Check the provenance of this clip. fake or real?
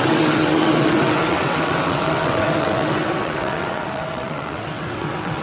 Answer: fake